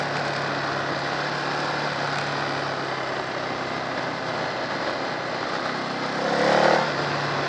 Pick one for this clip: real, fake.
real